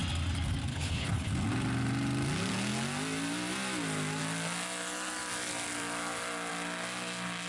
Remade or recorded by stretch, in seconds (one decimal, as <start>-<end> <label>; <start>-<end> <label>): 0.0-0.7 recorded; 0.7-1.3 remade; 1.3-7.5 recorded